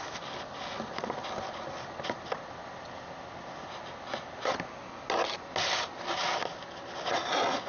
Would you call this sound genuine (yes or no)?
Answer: yes